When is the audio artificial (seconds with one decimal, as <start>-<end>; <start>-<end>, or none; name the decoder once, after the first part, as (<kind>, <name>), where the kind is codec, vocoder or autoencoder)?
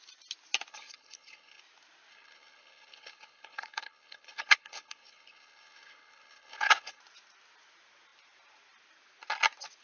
0.7-1.6 (codec, HILCodec); 2.1-7.0